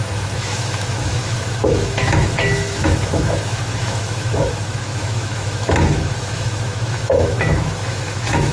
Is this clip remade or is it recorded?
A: remade